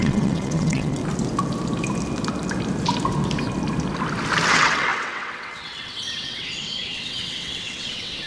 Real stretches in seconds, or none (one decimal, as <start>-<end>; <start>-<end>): 1.0-4.5